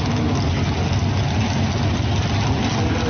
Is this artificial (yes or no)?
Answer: no